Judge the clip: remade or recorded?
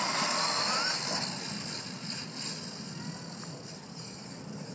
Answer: recorded